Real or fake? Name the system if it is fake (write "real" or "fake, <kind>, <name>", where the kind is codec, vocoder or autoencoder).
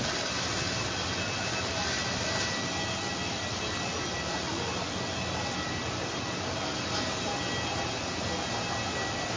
real